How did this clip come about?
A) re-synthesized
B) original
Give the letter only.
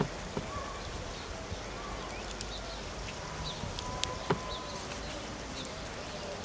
B